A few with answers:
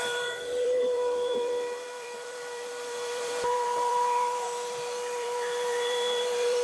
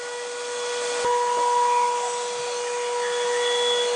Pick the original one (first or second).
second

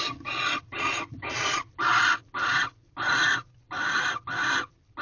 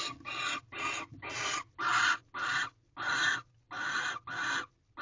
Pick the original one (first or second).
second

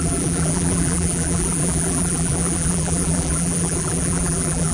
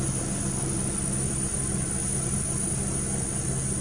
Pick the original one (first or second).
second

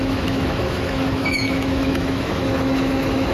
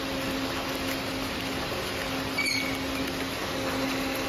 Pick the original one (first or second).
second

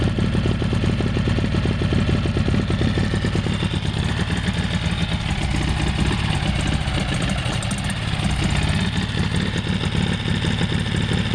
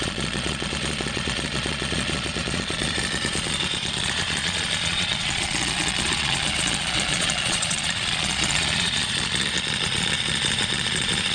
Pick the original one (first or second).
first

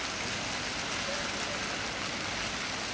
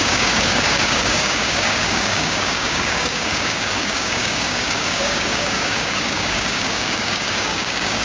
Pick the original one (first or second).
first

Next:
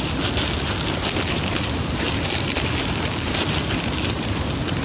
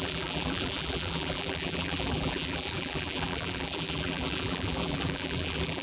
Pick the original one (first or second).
first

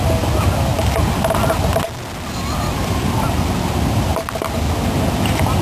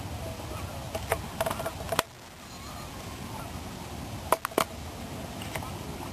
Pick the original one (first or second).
second